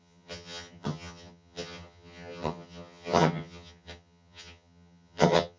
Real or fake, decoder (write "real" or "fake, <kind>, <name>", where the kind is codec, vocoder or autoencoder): fake, vocoder, HiFi-GAN